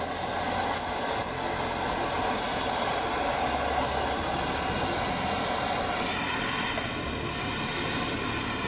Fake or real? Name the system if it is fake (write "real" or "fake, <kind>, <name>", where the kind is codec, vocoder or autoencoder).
real